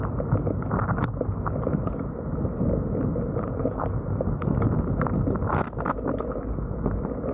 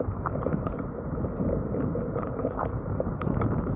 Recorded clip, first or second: first